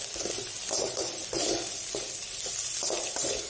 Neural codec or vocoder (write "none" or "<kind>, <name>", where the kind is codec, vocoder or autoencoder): none